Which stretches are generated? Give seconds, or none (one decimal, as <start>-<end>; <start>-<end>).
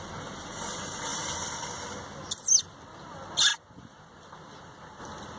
none